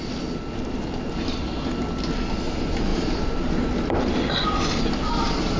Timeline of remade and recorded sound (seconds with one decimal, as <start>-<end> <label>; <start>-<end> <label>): 0.0-5.6 recorded